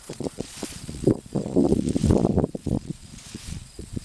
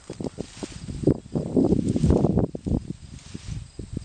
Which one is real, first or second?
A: second